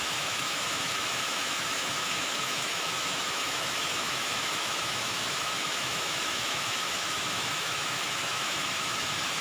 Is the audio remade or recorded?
remade